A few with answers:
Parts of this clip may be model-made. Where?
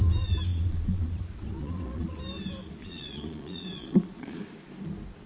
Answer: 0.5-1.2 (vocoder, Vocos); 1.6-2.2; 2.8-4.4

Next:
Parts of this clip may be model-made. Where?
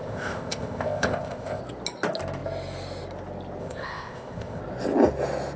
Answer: 0.0-1.6 (codec, ZipCodec); 3.6-4.6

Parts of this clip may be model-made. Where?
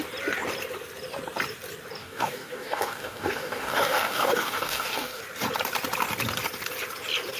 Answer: 2.0-5.2 (codec, DAC)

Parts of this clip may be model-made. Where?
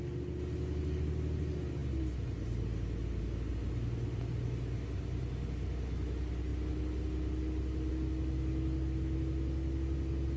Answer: none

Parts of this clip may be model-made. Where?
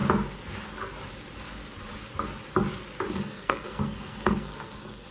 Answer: 3.1-5.1 (codec, SNAC)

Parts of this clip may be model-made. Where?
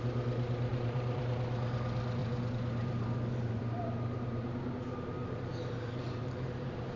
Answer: 0.7-1.2 (vocoder, BigVGAN v2); 2.2-4.7; 5.2-7.0